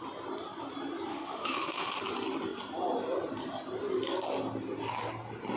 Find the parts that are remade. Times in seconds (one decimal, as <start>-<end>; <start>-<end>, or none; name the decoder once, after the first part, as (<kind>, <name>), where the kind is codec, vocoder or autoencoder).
1.1-2.0 (autoencoder, DAC-VAE)